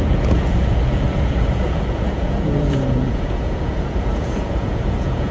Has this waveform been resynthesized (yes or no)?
yes